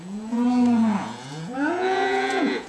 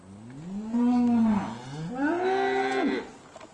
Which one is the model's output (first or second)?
first